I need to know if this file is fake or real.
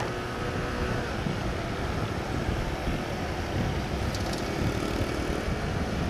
real